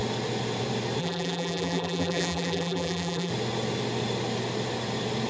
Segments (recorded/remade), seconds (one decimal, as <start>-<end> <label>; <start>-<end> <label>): 0.0-1.0 recorded; 1.0-3.3 remade; 3.3-5.3 recorded